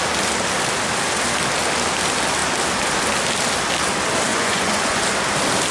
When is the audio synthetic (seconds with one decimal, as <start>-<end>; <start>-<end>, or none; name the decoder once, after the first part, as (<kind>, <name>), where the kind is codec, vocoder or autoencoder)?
4.3-5.0 (vocoder, Vocos)